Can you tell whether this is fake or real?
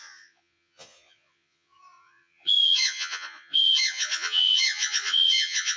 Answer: fake